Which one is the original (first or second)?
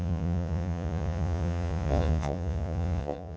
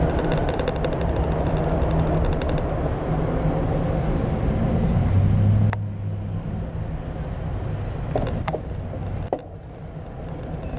second